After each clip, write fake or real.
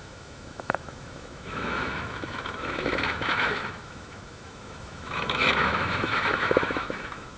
fake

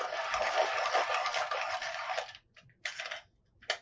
real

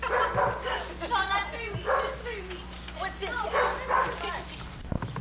real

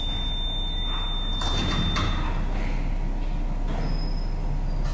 real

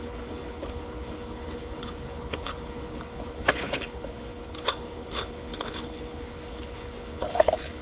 fake